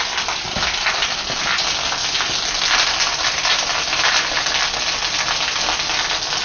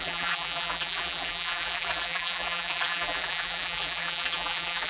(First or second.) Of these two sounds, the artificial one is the second